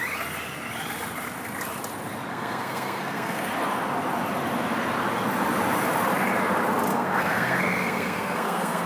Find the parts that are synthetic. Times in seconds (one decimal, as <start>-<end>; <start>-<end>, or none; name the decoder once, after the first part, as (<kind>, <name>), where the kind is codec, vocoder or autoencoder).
2.3-3.5 (codec, SNAC); 6.9-8.9